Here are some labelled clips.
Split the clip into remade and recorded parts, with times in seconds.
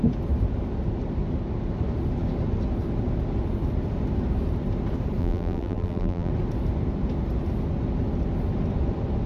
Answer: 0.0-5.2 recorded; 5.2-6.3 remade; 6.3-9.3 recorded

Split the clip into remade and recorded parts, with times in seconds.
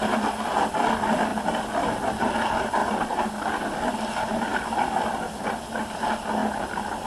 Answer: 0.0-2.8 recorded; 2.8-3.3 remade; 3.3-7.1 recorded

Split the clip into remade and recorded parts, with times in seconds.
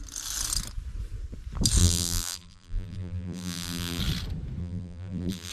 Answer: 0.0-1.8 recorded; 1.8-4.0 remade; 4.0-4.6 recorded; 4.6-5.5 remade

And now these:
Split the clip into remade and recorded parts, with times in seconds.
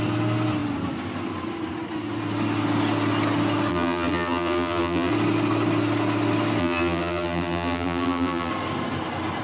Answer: 0.0-3.7 recorded; 3.7-5.1 remade; 5.1-6.6 recorded; 6.6-8.5 remade; 8.5-9.4 recorded